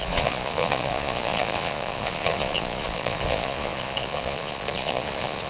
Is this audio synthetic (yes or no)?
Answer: yes